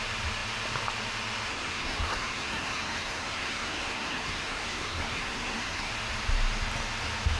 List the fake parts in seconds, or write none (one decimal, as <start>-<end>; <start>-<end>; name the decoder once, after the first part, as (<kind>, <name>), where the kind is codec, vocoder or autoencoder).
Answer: 1.5-5.9 (codec, SNAC)

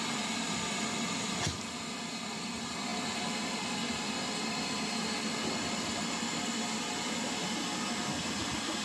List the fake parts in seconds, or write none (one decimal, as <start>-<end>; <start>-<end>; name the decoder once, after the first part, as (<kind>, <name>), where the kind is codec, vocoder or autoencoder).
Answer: none